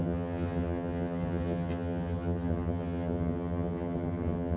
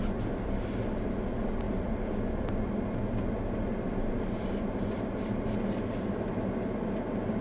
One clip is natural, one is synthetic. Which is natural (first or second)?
second